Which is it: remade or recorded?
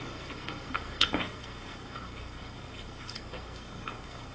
remade